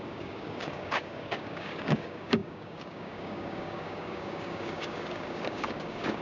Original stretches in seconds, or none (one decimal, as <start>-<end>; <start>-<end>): none